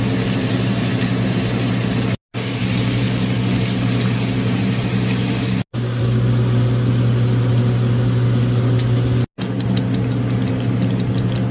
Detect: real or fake real